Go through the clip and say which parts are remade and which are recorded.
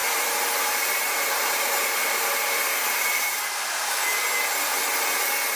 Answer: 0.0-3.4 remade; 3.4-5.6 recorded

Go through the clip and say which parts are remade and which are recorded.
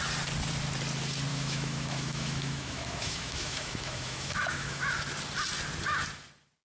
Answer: 0.0-1.3 recorded; 1.3-4.8 remade; 4.8-6.7 recorded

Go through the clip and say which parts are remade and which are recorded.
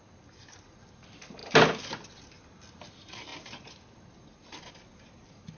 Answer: 0.0-5.6 recorded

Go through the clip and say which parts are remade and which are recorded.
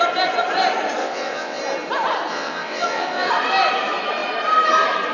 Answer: 0.0-1.0 recorded; 1.0-1.6 remade; 1.6-2.3 recorded; 2.3-3.3 remade; 3.3-5.1 recorded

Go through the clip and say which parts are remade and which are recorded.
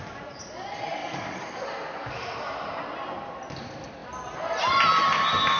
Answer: 0.0-1.0 recorded; 1.0-1.6 remade; 1.6-5.6 recorded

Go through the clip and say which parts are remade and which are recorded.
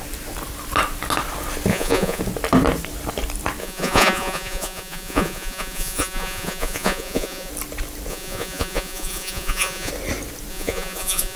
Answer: 0.0-1.7 recorded; 1.7-2.2 remade; 2.2-3.6 recorded; 3.6-7.5 remade; 7.5-8.1 recorded; 8.1-9.9 remade; 9.9-10.5 recorded; 10.5-11.4 remade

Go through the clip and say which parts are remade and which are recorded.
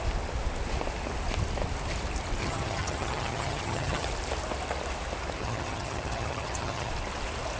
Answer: 0.0-2.4 recorded; 2.4-4.1 remade; 4.1-5.4 recorded; 5.4-6.9 remade; 6.9-7.6 recorded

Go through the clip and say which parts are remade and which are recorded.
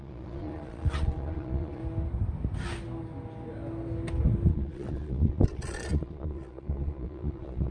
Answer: 0.0-1.8 remade; 1.8-4.5 recorded; 4.5-7.7 remade